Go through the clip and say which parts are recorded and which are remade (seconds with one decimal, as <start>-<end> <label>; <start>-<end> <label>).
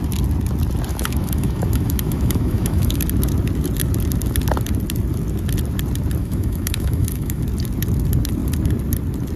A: 0.0-0.9 recorded; 0.9-3.0 remade; 3.0-6.2 recorded; 6.2-7.4 remade; 7.4-9.4 recorded